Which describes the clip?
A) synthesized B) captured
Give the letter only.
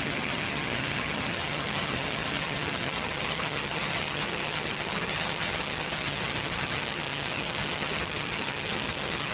A